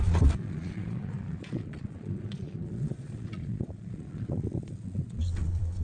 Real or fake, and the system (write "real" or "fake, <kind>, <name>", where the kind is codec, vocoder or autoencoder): fake, vocoder, Vocos